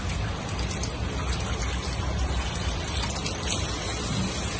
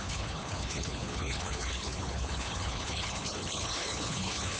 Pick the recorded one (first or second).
first